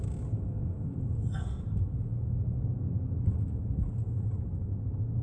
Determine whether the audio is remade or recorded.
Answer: recorded